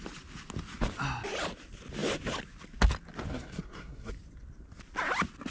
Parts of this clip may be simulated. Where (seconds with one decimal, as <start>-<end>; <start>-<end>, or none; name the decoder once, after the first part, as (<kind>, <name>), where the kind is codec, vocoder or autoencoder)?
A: 3.3-4.1 (codec, SNAC)